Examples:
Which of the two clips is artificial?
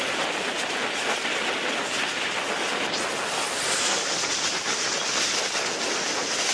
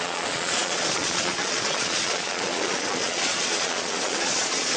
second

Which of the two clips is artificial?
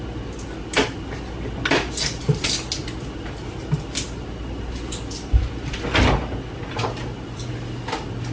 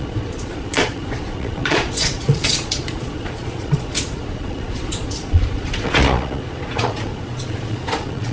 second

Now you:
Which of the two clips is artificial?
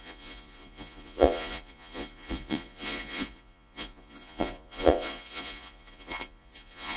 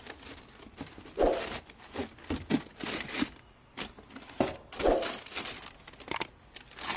first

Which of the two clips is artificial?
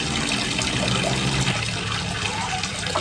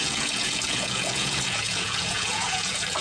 second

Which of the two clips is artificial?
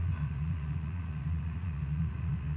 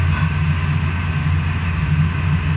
first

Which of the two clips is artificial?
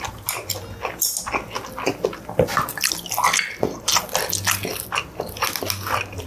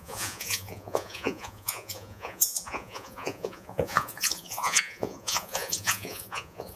second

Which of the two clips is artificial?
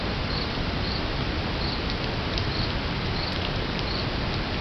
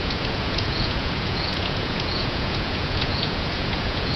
second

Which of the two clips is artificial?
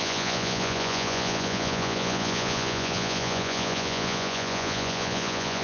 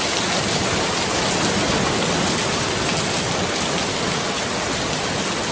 first